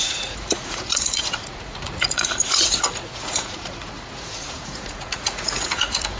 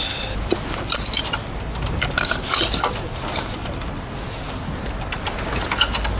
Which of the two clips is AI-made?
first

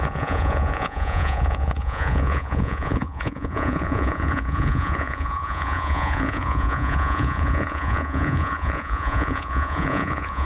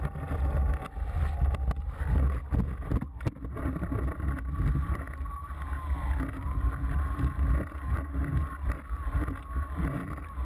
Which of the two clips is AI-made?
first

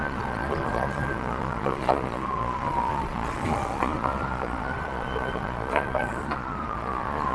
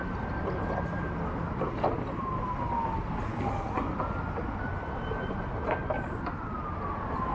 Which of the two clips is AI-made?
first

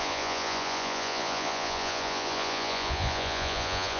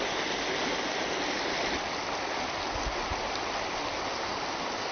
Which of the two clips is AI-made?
first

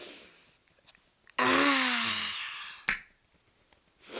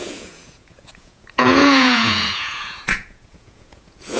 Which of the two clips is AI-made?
second